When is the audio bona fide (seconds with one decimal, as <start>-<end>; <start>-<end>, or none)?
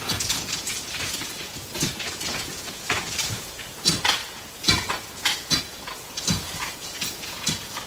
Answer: none